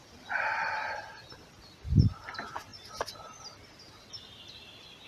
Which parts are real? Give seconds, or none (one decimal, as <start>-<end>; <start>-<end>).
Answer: 0.0-5.1